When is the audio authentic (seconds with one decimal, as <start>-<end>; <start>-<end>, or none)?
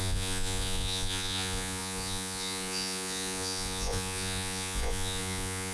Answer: none